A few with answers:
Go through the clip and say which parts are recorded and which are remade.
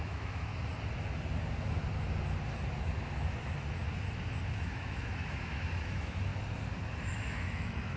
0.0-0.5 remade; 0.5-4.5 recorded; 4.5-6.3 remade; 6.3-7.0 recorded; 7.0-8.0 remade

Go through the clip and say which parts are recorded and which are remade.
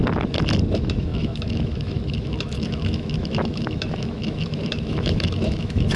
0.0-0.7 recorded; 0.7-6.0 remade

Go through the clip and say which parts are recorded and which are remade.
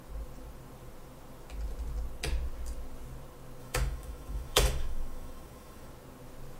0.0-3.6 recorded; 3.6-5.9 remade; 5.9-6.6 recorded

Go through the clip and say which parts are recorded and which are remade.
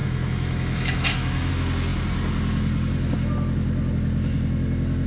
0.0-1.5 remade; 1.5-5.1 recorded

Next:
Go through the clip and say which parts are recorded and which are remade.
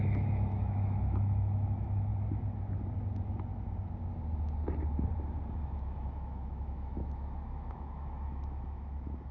0.0-2.1 remade; 2.1-5.6 recorded; 5.6-9.3 remade